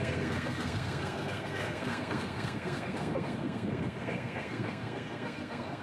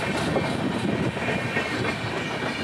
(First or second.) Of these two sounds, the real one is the second